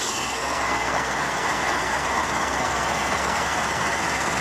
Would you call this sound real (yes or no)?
no